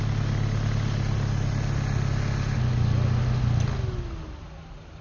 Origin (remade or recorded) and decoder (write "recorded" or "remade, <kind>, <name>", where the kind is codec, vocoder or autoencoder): recorded